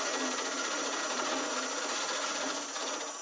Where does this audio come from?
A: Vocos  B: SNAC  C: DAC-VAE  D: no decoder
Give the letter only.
A